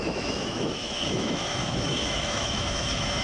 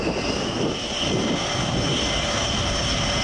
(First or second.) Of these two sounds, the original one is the second